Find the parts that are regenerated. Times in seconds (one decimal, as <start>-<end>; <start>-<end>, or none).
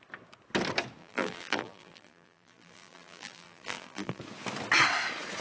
1.0-4.2